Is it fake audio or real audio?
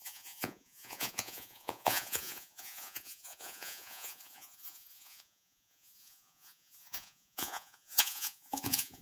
fake